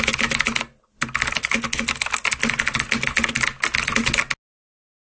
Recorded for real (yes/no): yes